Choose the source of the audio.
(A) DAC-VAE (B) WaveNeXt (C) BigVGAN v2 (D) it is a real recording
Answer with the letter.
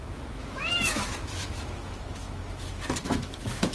A